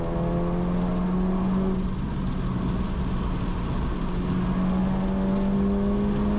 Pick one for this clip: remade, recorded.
recorded